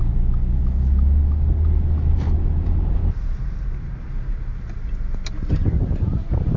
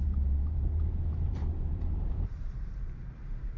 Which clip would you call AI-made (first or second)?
second